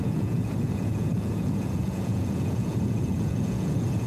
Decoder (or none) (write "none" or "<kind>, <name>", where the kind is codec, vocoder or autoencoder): vocoder, Vocos